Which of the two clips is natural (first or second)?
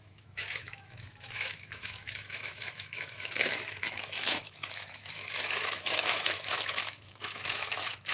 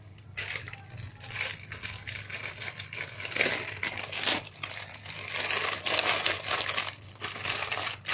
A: second